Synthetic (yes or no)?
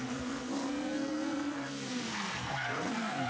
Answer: yes